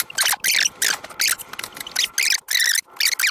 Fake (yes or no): no